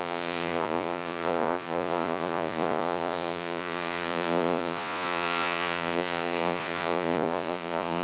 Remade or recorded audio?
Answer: remade